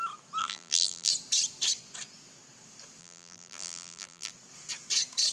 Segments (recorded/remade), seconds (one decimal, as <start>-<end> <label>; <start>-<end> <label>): 0.0-0.4 recorded; 0.4-1.1 remade; 1.1-3.0 recorded; 3.0-4.3 remade; 4.3-5.3 recorded

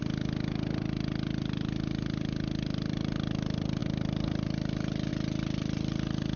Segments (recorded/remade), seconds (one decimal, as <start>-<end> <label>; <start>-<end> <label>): 0.0-6.4 recorded

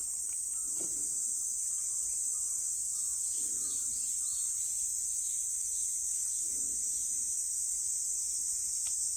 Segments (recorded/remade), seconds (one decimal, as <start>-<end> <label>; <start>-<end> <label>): 0.0-2.1 remade; 2.1-3.0 recorded; 3.0-6.7 remade; 6.7-8.3 recorded; 8.3-9.2 remade

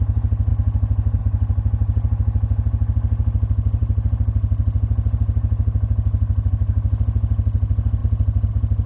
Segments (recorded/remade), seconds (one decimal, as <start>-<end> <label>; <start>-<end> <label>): 0.0-8.0 recorded; 8.0-8.5 remade; 8.5-8.9 recorded

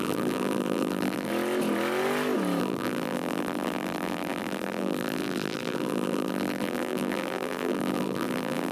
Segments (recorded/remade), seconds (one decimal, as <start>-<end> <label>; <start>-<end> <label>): 0.0-1.3 remade; 1.3-2.6 recorded; 2.6-8.7 remade

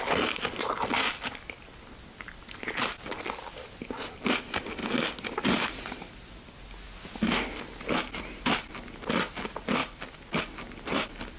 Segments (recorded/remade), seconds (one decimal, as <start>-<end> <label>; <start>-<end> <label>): 0.0-11.4 recorded

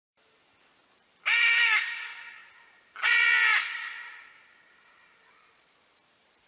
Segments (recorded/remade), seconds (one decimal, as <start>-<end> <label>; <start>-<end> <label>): 0.0-2.4 remade; 2.4-5.7 recorded; 5.7-6.5 remade

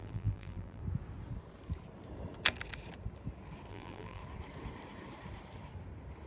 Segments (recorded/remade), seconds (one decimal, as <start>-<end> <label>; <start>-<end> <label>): 0.0-0.8 remade; 0.8-3.7 recorded; 3.7-4.2 remade; 4.2-6.3 recorded